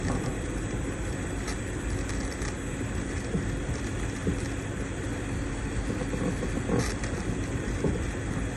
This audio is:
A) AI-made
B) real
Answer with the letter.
B